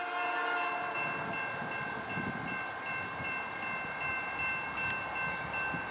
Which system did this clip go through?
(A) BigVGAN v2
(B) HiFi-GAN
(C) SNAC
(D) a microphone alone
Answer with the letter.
D